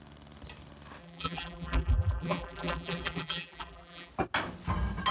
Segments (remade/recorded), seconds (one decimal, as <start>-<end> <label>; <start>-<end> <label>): 0.0-1.0 recorded; 1.0-4.1 remade; 4.1-5.1 recorded